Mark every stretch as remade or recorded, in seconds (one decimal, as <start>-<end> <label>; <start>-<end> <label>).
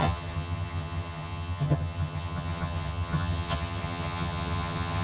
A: 0.0-5.0 remade